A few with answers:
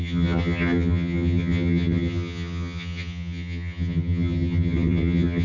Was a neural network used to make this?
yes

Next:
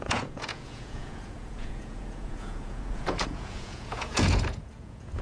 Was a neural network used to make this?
yes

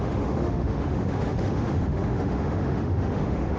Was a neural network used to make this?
yes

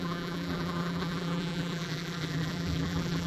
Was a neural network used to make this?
yes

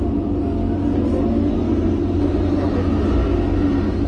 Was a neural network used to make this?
no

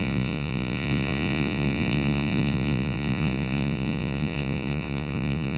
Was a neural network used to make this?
yes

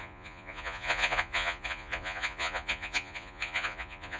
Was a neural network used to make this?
yes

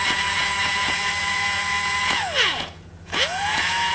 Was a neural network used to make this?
yes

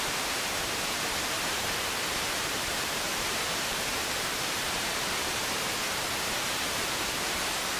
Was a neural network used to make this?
yes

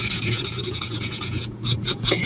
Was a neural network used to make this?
yes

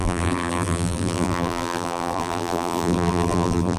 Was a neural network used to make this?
yes